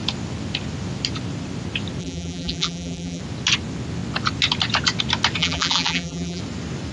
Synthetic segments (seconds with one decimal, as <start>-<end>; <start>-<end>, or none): 2.0-3.2; 5.4-6.4